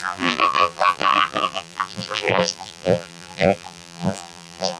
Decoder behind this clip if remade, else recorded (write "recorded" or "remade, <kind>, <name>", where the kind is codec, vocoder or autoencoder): remade, vocoder, BigVGAN v2